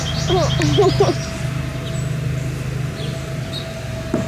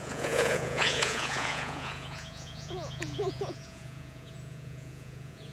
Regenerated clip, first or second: second